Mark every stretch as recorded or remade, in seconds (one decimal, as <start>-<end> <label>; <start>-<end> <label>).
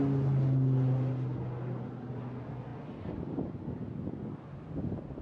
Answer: 0.0-5.2 recorded